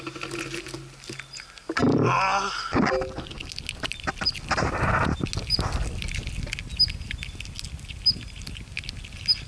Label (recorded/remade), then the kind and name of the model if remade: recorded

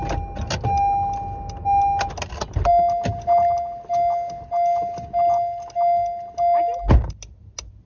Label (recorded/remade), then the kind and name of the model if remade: recorded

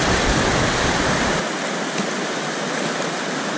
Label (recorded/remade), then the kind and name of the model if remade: recorded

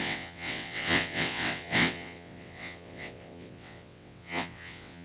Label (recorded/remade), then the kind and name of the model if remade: remade, vocoder, WaveNeXt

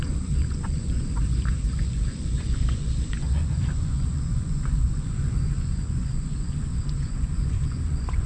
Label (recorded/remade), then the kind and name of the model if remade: remade, vocoder, Vocos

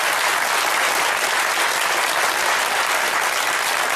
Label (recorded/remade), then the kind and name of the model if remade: recorded